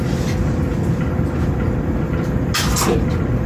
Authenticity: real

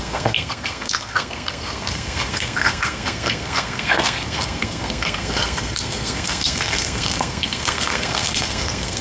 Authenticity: fake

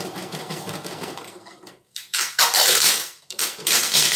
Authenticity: fake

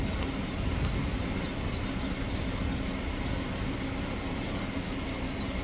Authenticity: real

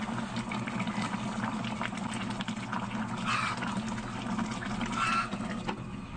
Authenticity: real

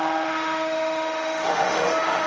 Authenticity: fake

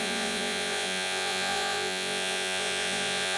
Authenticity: fake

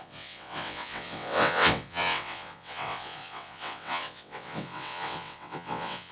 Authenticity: fake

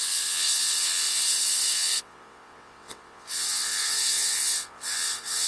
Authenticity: fake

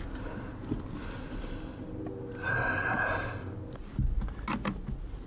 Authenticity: real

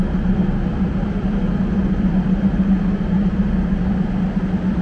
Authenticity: real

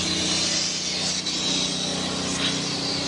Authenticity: real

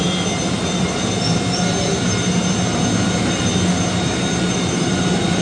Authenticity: real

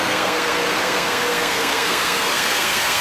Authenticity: fake